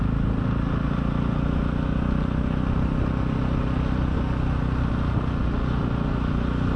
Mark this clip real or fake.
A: real